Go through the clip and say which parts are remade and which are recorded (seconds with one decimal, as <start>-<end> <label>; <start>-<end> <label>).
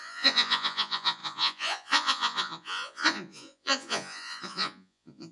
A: 0.0-5.3 remade